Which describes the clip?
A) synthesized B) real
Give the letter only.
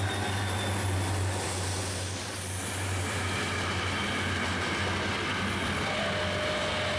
B